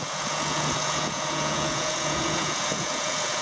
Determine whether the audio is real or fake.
fake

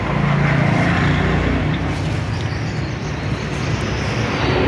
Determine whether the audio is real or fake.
real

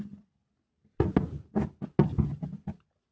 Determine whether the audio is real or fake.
real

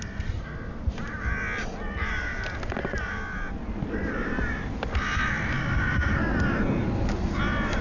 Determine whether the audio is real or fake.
real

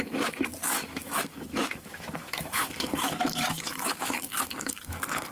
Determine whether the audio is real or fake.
fake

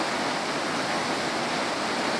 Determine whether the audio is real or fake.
real